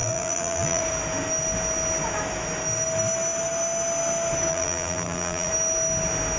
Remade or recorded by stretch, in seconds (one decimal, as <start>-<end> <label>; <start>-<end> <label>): 0.0-0.8 remade; 0.8-4.5 recorded; 4.5-5.5 remade; 5.5-6.4 recorded